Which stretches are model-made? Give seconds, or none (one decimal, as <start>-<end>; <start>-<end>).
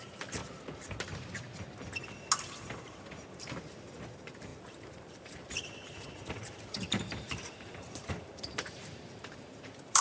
0.0-0.4; 3.3-10.0